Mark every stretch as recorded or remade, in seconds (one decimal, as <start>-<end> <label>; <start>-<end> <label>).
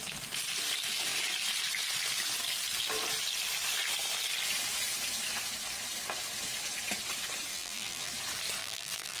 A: 0.0-7.5 recorded; 7.5-8.1 remade; 8.1-8.6 recorded; 8.6-9.2 remade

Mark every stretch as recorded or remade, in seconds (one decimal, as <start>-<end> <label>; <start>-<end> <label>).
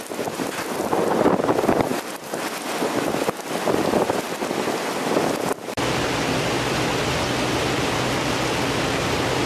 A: 0.0-9.5 recorded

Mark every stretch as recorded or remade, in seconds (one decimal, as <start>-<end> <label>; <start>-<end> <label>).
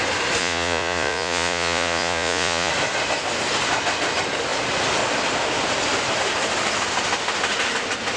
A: 0.0-0.4 recorded; 0.4-2.7 remade; 2.7-8.2 recorded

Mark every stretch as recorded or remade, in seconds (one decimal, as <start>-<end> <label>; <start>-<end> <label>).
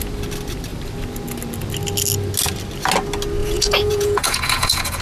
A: 0.0-3.4 recorded; 3.4-5.0 remade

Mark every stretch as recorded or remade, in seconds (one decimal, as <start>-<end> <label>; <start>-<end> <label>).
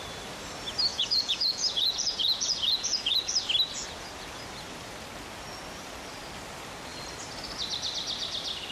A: 0.0-0.9 recorded; 0.9-3.3 remade; 3.3-8.7 recorded